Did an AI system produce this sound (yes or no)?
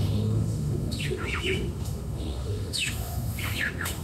yes